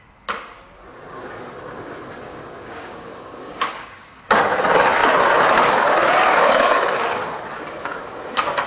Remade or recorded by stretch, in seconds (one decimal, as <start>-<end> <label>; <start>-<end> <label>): 0.0-2.3 recorded; 2.3-4.2 remade; 4.2-8.7 recorded